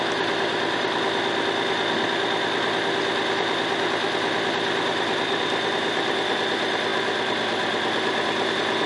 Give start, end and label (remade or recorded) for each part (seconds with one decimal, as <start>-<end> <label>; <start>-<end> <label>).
0.0-8.9 recorded